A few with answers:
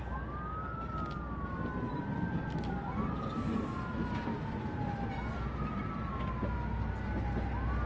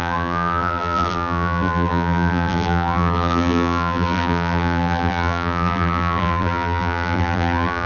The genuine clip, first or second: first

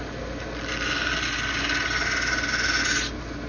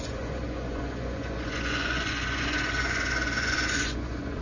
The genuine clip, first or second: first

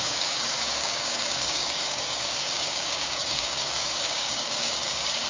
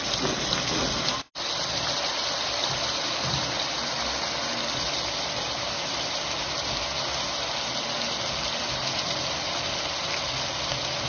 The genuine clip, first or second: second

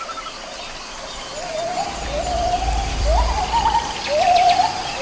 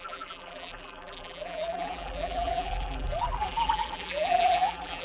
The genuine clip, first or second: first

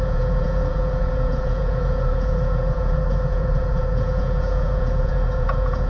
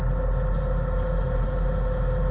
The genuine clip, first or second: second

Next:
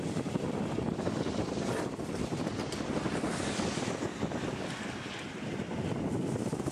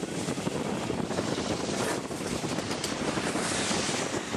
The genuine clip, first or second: first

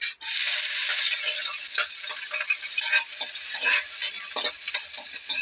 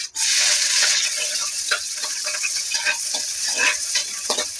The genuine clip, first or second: first